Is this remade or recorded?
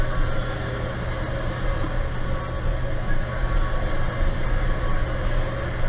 recorded